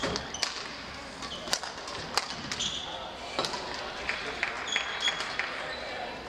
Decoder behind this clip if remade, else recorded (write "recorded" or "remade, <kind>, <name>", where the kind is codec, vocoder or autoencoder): recorded